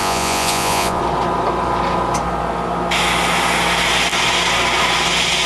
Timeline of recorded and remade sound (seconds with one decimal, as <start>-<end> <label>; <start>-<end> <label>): 0.0-1.0 remade; 1.0-5.5 recorded